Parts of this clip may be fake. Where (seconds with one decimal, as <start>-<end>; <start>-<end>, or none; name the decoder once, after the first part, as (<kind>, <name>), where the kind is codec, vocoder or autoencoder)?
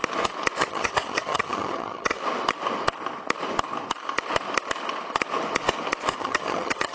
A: 0.6-2.2 (vocoder, HiFi-GAN); 6.2-6.9